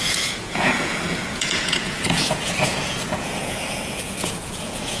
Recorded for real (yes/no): no